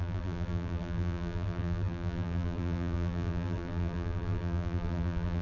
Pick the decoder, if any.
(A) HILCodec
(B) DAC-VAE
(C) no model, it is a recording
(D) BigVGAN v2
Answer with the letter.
D